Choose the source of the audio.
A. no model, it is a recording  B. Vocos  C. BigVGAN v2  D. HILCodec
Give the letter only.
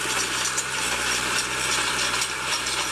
C